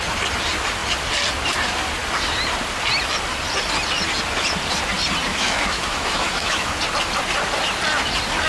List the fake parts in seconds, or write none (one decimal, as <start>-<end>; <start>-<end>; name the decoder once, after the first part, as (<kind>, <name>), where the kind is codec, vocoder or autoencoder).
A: 5.3-6.7 (autoencoder, DAC-VAE)